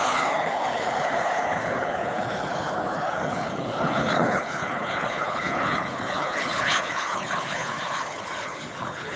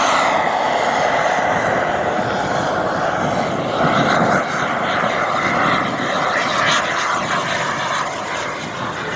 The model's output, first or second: first